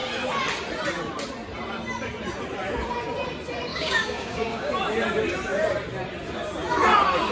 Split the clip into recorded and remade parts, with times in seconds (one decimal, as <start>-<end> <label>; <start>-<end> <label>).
0.0-3.7 recorded; 3.7-4.7 remade; 4.7-7.3 recorded